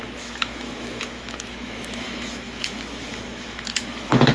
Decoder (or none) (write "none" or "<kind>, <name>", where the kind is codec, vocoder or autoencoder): autoencoder, DAC-VAE